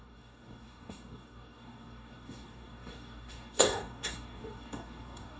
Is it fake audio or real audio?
fake